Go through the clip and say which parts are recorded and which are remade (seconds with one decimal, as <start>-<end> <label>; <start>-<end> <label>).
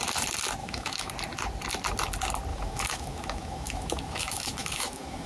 0.0-0.6 recorded; 0.6-1.1 remade; 1.1-2.5 recorded; 2.5-5.3 remade